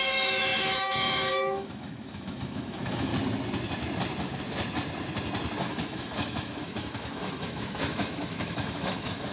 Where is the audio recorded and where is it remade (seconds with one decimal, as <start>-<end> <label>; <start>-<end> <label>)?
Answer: 0.0-3.1 remade; 3.1-5.6 recorded; 5.6-9.3 remade